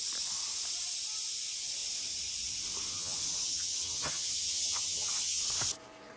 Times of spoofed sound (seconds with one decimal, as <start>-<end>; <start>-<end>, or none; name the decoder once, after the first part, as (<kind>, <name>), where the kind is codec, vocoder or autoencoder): 2.9-5.4 (vocoder, HiFi-GAN)